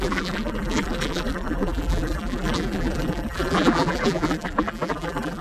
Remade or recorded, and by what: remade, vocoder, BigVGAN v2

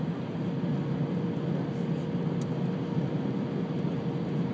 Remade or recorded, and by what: recorded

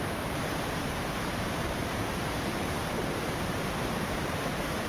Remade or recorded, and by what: remade, vocoder, BigVGAN v2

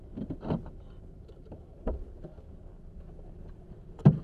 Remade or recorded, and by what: remade, vocoder, BigVGAN v2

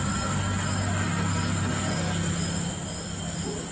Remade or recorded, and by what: recorded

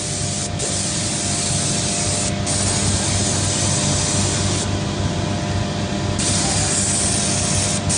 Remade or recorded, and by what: recorded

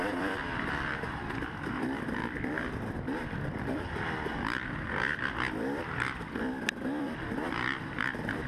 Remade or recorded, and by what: remade, vocoder, BigVGAN v2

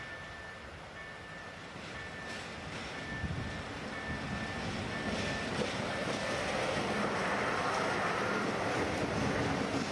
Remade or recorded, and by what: recorded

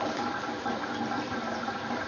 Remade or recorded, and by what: recorded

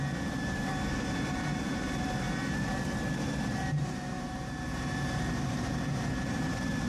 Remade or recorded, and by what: remade, vocoder, BigVGAN v2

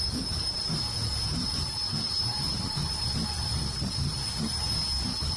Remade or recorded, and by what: remade, vocoder, BigVGAN v2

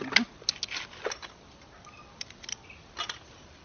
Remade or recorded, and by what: recorded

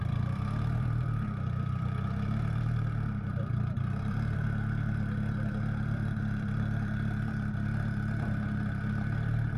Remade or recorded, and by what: remade, vocoder, BigVGAN v2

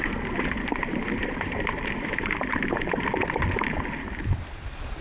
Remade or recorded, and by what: remade, vocoder, BigVGAN v2